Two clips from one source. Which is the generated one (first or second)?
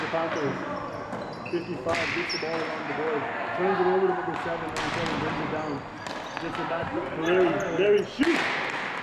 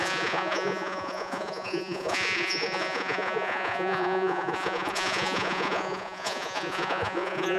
second